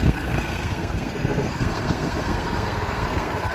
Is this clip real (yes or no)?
no